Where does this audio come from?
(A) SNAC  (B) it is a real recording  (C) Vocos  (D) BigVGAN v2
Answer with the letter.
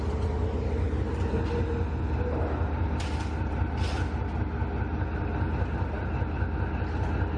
B